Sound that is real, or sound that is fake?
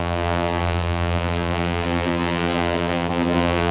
fake